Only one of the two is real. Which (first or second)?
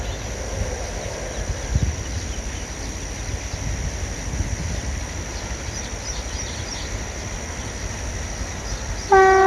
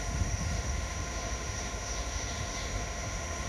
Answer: first